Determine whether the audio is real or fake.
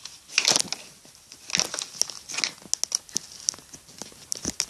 real